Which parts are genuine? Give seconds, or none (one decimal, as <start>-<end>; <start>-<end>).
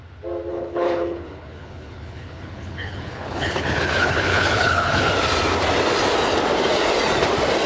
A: 0.0-0.5; 5.1-7.7